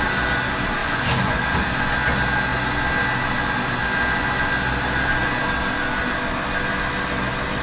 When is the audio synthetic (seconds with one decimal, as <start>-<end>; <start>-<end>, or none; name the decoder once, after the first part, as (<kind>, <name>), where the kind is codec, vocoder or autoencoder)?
0.8-1.4 (vocoder, Vocos)